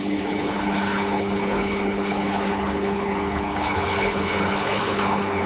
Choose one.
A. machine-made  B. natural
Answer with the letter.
A